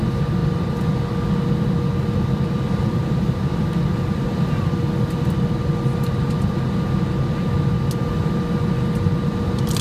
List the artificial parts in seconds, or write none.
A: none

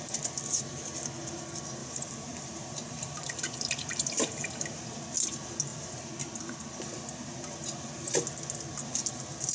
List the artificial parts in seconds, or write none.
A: 1.8-4.8 (vocoder, BigVGAN v2)